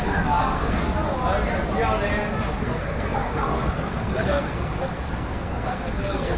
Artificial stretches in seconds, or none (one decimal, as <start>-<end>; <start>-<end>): 0.0-0.8; 2.6-6.4